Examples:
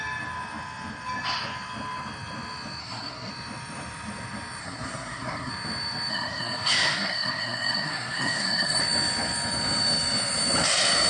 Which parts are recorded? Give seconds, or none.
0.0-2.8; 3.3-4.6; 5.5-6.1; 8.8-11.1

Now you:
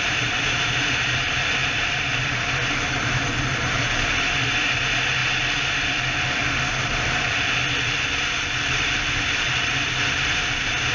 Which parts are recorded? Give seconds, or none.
5.2-9.3

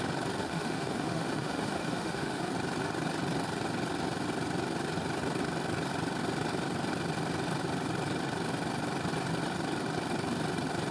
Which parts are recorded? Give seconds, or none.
0.0-0.4; 2.5-10.9